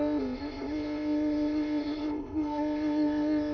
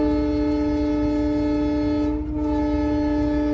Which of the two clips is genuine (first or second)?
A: second